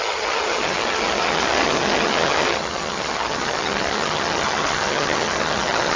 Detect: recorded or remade remade